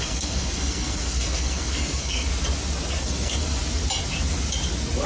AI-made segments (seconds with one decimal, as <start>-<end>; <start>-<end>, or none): 0.0-2.3; 3.0-3.5